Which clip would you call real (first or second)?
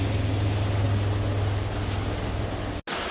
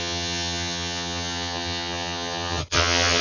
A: first